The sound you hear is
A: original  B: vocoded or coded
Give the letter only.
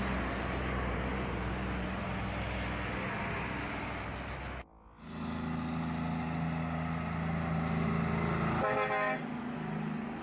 A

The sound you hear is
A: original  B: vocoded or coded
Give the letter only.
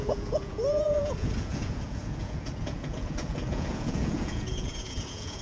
B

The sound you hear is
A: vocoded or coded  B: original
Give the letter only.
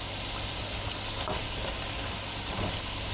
B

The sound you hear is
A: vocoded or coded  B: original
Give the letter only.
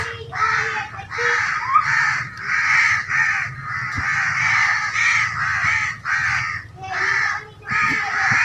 B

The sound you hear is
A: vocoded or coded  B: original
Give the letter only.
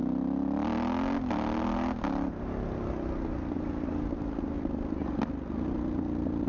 B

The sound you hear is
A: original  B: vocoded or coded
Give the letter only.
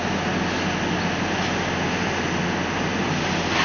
A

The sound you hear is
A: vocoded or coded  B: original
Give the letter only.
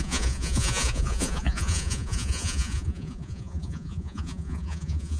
A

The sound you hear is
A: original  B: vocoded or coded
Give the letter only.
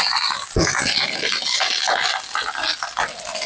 A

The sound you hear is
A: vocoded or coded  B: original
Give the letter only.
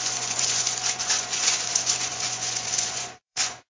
A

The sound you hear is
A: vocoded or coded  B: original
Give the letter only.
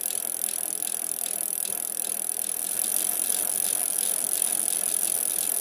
B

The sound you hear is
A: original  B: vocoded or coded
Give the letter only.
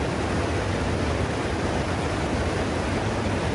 A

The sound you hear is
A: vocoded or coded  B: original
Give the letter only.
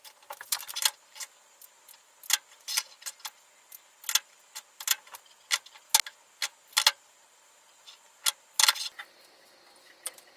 B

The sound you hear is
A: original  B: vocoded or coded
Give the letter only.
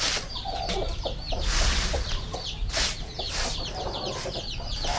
A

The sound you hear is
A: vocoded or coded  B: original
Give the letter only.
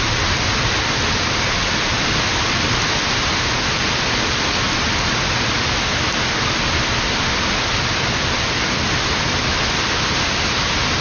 B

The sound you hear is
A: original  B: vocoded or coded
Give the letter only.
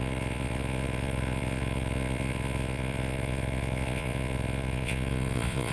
B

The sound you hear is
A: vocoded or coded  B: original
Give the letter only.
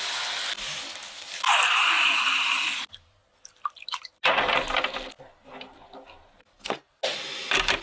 B